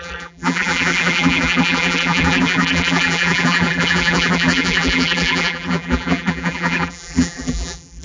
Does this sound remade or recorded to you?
remade